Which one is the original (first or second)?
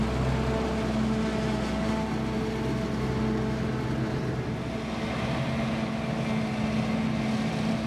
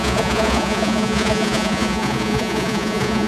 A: first